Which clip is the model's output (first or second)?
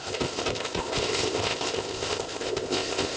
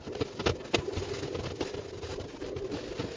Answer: first